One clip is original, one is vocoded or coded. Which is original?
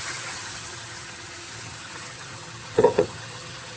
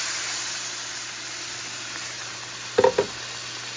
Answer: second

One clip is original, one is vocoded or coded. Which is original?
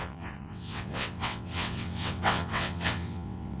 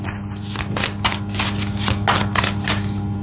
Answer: second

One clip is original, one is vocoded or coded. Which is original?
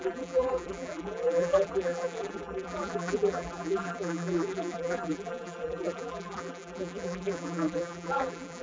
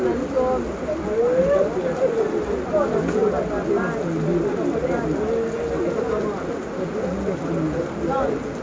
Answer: second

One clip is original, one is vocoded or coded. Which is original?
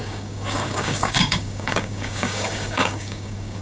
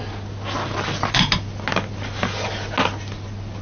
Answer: second